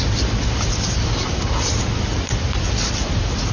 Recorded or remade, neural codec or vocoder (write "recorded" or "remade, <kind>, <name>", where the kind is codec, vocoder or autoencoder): recorded